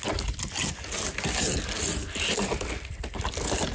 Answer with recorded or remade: recorded